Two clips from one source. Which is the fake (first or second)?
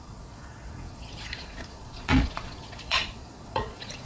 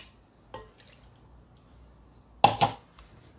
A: first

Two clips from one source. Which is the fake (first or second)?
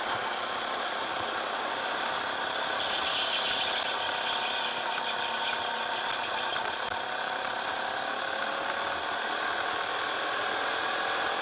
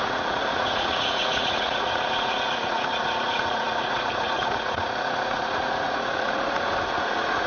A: second